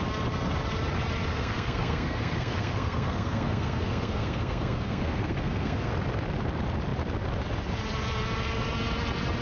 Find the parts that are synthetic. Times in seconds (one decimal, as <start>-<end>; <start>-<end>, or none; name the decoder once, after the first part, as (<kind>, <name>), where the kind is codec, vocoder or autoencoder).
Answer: 1.3-5.9 (codec, SNAC)

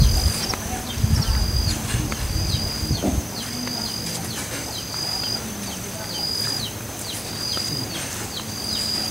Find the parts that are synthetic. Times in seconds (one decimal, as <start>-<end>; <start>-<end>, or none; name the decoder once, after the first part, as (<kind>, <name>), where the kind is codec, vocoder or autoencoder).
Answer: none

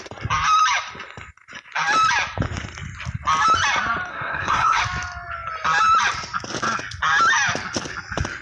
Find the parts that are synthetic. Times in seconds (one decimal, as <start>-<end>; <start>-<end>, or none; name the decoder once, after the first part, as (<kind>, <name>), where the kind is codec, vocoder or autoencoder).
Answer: 4.1-4.8 (codec, SNAC)

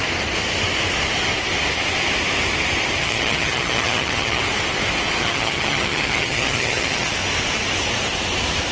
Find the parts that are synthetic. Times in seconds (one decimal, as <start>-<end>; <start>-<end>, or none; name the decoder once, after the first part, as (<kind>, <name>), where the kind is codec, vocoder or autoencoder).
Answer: 3.0-4.4 (vocoder, HiFi-GAN); 5.2-7.1